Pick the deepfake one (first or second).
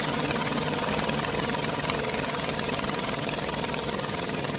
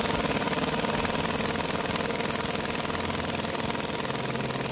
first